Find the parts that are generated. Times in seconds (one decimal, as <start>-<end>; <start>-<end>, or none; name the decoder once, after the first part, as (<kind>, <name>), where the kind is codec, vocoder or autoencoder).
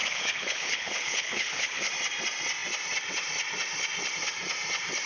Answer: 0.0-1.9 (codec, HILCodec)